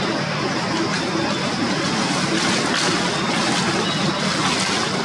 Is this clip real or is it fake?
real